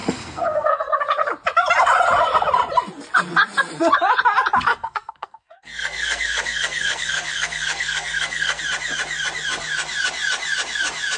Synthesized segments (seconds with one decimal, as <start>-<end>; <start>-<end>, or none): 0.0-1.0; 4.7-8.6